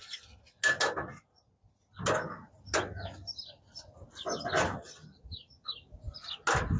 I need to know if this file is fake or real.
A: real